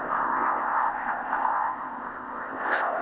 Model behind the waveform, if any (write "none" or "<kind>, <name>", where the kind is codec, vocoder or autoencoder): codec, ZipCodec